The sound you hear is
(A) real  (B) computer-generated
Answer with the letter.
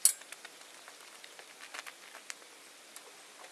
A